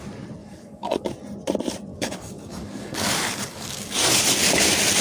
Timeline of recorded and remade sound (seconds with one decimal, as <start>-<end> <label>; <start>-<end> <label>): 0.0-0.4 recorded; 0.4-1.1 remade; 1.1-1.9 recorded; 1.9-4.2 remade; 4.2-5.0 recorded

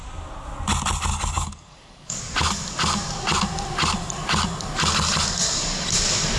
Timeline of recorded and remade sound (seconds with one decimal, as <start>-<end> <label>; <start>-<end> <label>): 0.0-1.1 recorded; 1.1-2.2 remade; 2.2-6.4 recorded